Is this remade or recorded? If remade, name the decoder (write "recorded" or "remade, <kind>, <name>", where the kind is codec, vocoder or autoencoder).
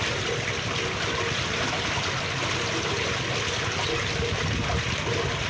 recorded